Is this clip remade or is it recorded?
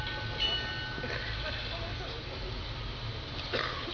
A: recorded